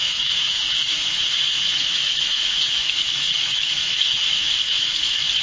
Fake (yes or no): yes